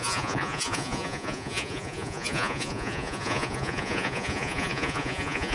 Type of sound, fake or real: fake